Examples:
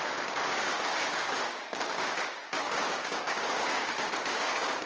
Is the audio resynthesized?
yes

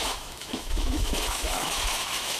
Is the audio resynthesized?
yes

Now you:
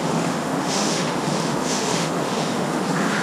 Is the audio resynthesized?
yes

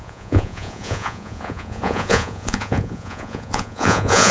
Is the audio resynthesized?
yes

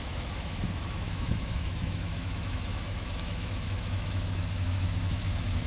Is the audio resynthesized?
yes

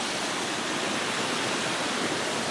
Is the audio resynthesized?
no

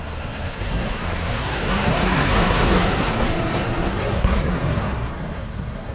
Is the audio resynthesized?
yes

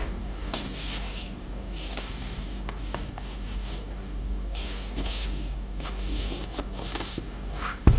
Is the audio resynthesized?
yes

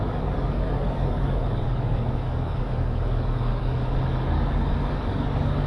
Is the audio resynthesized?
yes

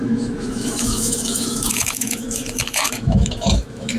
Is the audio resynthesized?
yes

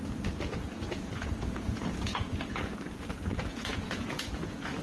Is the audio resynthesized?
yes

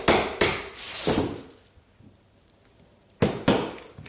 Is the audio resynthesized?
no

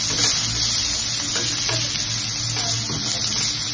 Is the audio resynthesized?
no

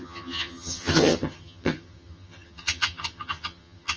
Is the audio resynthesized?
yes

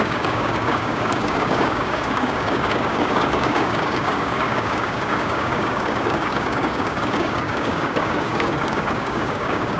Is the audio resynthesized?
yes